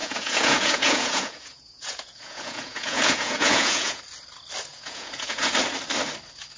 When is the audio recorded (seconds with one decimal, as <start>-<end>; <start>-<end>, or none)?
4.0-4.7; 5.5-6.6